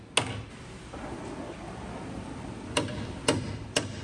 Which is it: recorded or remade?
recorded